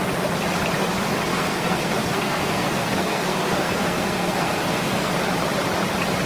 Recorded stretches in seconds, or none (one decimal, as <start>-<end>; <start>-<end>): 0.0-1.3; 5.1-6.3